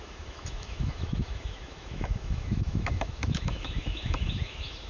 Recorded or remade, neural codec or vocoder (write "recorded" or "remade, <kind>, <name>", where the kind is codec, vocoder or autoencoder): remade, autoencoder, DAC-VAE